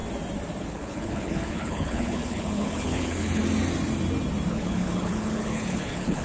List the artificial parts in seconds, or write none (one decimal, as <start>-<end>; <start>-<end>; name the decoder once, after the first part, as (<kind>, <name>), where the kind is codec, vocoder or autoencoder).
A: 0.6-3.4 (codec, HILCodec); 4.5-6.2